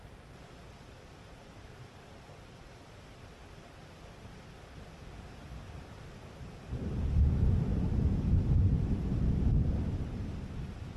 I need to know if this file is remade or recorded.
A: recorded